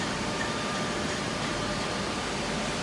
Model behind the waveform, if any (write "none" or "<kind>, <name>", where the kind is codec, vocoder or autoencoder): vocoder, BigVGAN v2